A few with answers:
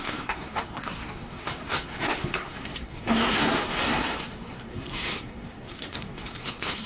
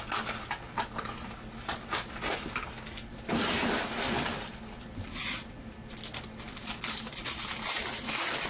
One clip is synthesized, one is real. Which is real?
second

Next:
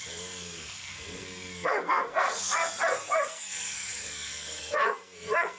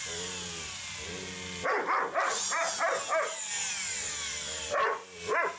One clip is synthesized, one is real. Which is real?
second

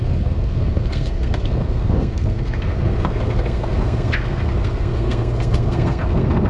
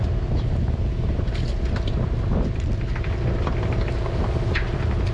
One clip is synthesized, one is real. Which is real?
second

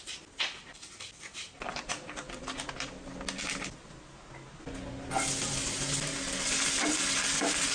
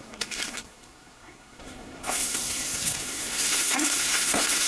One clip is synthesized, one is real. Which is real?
first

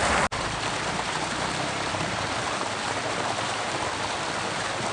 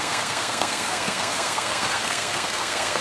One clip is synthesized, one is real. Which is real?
first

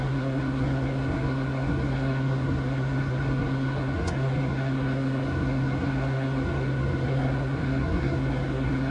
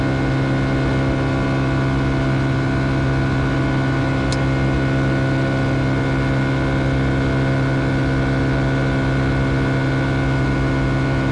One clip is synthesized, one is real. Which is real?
second